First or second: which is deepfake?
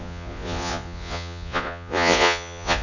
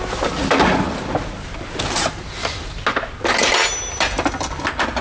first